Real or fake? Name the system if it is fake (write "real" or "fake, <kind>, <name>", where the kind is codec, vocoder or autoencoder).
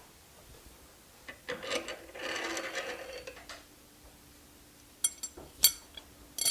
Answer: real